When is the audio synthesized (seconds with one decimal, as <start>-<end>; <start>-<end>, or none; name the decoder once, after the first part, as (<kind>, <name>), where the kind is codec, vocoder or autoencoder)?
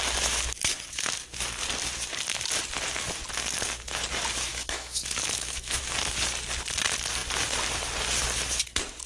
4.5-5.8 (autoencoder, DAC-VAE)